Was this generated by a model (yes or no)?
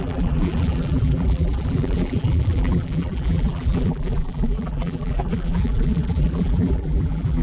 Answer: yes